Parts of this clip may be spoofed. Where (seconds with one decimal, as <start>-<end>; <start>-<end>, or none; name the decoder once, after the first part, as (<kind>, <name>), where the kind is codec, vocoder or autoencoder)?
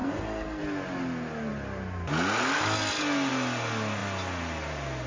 0.0-0.6 (codec, SNAC)